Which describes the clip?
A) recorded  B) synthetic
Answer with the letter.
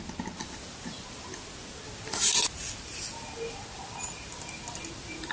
A